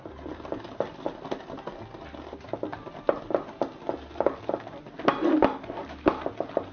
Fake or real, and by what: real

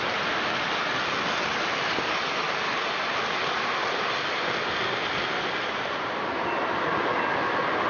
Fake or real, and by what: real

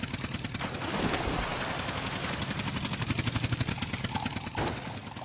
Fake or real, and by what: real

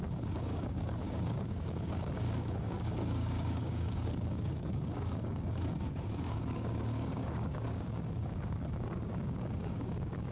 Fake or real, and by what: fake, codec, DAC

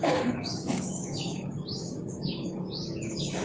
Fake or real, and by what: fake, codec, DAC